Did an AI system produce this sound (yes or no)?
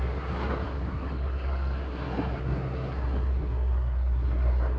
yes